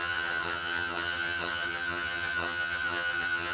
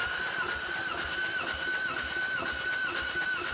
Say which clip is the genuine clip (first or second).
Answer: second